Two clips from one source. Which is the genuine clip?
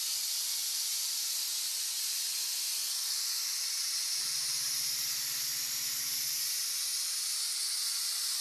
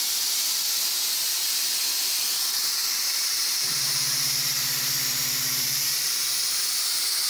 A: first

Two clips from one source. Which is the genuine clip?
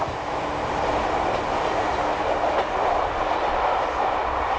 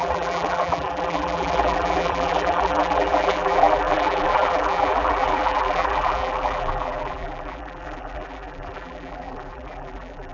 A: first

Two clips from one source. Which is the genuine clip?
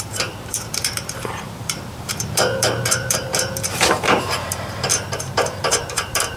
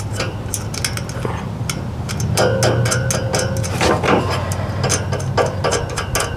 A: second